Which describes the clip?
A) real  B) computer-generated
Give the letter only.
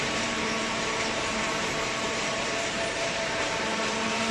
B